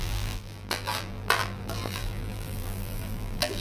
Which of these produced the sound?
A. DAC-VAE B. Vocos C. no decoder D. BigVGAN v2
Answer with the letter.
D